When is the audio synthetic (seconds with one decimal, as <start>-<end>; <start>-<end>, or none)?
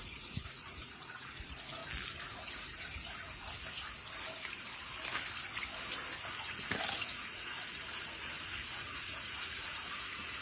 0.0-1.8; 6.3-10.4